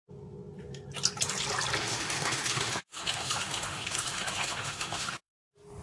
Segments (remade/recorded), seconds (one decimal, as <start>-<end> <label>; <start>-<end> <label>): 0.0-1.8 recorded; 1.8-5.3 remade; 5.3-5.8 recorded